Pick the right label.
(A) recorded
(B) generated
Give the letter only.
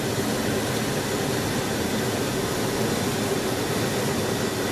A